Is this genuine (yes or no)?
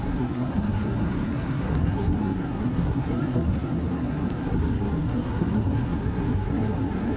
no